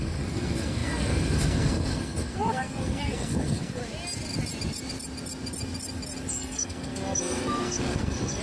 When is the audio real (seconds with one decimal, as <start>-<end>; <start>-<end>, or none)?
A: 3.8-6.3